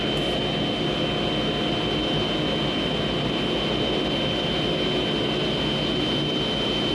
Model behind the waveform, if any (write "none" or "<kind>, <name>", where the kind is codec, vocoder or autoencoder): none